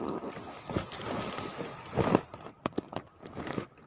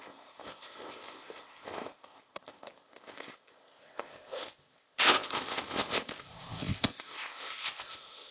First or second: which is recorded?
first